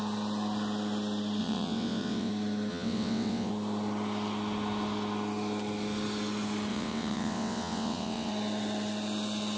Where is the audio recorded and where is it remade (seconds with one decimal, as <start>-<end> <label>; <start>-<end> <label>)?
0.0-1.4 recorded; 1.4-2.3 remade; 2.3-2.7 recorded; 2.7-3.5 remade; 3.5-6.7 recorded; 6.7-8.3 remade; 8.3-9.6 recorded